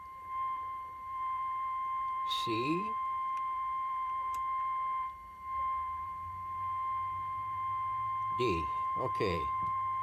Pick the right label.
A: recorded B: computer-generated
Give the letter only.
B